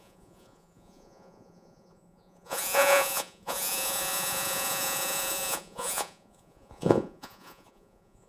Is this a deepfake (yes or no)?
yes